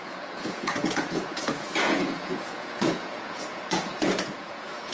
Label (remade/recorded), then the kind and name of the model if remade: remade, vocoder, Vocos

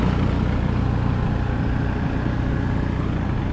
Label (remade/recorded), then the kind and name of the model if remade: recorded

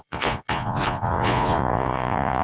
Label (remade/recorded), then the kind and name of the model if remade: remade, vocoder, Vocos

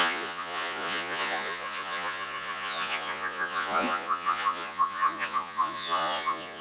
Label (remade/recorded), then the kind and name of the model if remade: remade, vocoder, Vocos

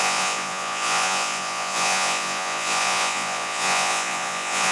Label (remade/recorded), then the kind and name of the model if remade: remade, vocoder, Vocos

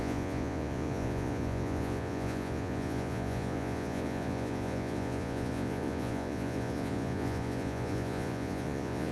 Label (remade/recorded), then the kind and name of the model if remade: remade, vocoder, Vocos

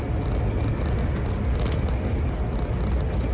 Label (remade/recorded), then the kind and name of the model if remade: recorded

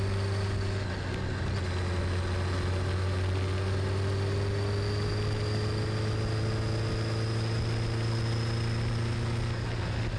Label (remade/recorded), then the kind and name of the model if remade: recorded